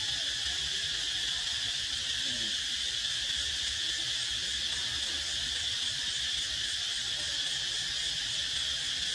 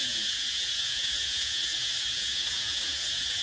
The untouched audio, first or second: first